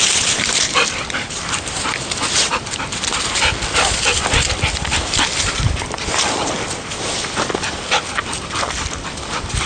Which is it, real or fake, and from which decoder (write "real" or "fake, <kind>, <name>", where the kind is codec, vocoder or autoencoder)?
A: fake, vocoder, BigVGAN v2